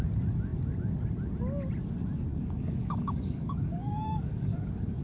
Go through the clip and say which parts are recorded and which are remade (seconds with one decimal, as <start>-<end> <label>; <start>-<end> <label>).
0.0-2.3 recorded; 2.3-5.0 remade

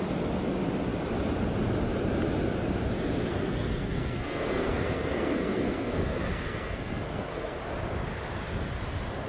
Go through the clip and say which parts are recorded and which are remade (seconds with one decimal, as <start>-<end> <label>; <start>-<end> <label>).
0.0-3.3 recorded; 3.3-7.6 remade; 7.6-9.3 recorded

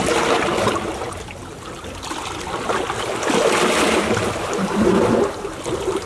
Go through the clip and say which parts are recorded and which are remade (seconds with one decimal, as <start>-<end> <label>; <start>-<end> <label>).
0.0-6.1 recorded

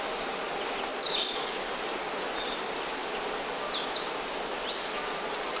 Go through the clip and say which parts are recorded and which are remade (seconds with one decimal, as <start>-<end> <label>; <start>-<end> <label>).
0.0-5.6 recorded

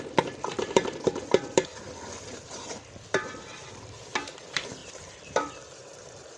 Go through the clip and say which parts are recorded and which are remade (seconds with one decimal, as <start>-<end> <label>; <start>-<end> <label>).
0.0-1.7 remade; 1.7-4.3 recorded; 4.3-4.8 remade; 4.8-5.6 recorded; 5.6-6.4 remade